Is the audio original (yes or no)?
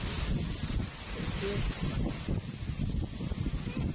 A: yes